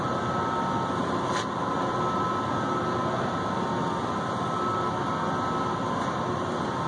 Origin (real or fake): real